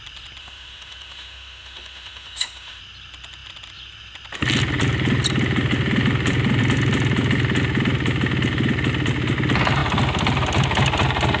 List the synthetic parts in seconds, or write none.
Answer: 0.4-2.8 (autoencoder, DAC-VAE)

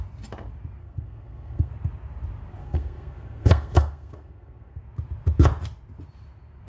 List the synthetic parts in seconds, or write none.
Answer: 0.8-1.7 (codec, SNAC); 2.6-4.8

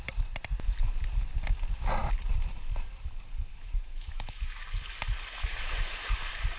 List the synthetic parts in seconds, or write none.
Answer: 3.5-4.6 (autoencoder, DAC-VAE); 5.4-6.1

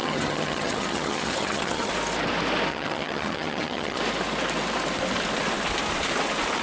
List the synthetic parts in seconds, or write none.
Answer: 0.0-1.9 (vocoder, HiFi-GAN); 2.7-4.0

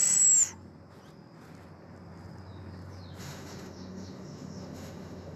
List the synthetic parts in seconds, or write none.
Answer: 3.2-5.4 (autoencoder, DAC-VAE)

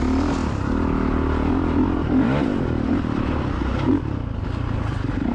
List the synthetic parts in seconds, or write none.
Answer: none

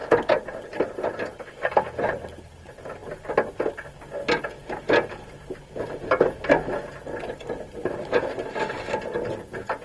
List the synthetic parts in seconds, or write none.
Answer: none

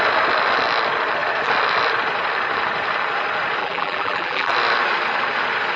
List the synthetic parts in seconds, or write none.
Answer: 3.6-4.5 (vocoder, BigVGAN v2)